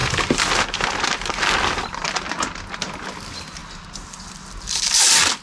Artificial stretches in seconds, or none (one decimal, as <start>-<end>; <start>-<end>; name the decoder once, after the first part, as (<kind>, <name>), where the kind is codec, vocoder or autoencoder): none